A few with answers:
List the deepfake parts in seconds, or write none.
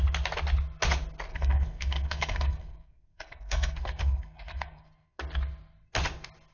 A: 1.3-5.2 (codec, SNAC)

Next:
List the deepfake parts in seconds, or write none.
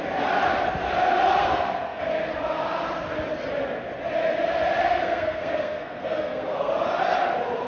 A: 1.4-2.0 (codec, SNAC); 4.9-6.7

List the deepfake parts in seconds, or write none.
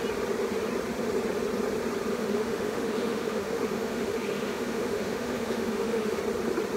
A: 2.1-6.2 (autoencoder, DAC-VAE)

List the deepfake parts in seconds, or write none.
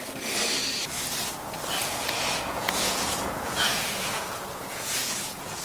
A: 1.8-5.6 (vocoder, Vocos)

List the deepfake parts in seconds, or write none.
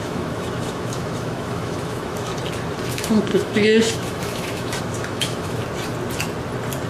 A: 0.0-2.3 (autoencoder, DAC-VAE); 2.9-5.6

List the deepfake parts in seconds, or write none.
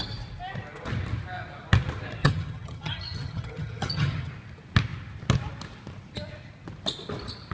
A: 2.2-4.3 (vocoder, HiFi-GAN)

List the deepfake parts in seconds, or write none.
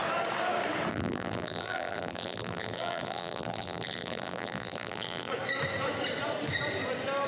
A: 0.9-5.3 (vocoder, BigVGAN v2)